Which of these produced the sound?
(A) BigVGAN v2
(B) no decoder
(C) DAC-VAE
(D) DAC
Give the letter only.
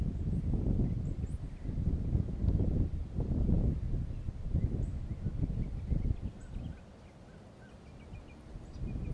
B